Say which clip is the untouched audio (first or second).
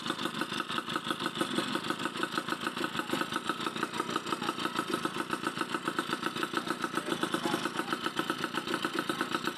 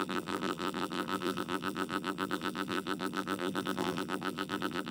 first